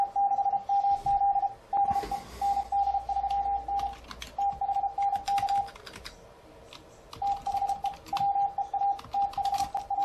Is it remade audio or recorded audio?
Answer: recorded